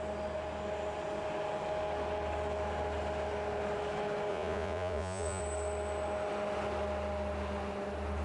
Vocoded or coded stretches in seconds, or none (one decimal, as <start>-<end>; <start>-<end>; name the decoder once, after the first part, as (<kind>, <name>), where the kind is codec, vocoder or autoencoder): 4.3-5.4 (vocoder, Vocos)